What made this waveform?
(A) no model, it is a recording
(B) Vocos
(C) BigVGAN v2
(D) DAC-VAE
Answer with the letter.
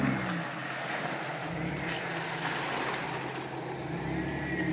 A